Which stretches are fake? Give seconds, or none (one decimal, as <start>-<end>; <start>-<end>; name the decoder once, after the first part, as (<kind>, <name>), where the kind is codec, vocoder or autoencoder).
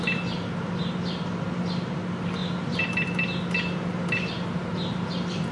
none